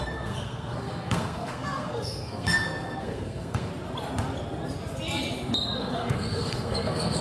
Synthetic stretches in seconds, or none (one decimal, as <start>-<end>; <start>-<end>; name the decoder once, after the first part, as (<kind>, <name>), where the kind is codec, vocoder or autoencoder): 0.0-3.7 (codec, SNAC); 5.8-7.2